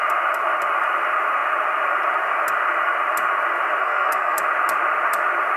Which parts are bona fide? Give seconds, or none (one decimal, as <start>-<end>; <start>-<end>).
0.0-3.8; 4.4-5.6